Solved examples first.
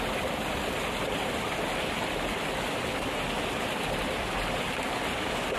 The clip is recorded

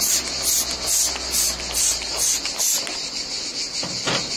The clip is recorded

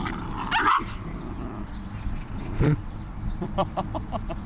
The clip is remade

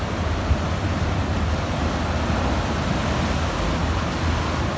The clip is recorded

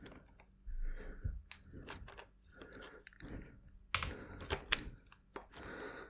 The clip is recorded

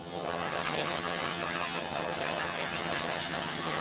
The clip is remade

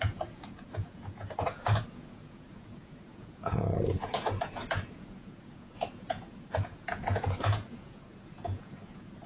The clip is remade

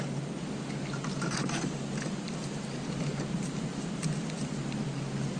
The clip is recorded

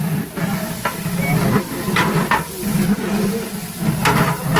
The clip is recorded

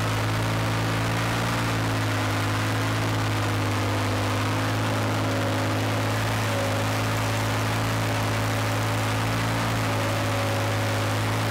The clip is recorded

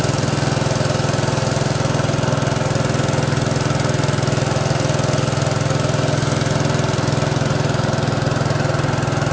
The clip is recorded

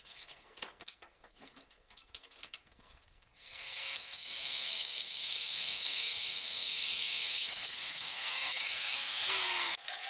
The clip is remade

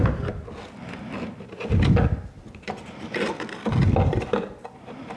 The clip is recorded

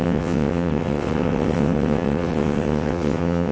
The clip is remade